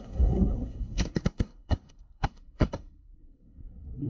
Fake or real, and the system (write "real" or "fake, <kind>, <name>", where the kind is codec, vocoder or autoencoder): fake, codec, SNAC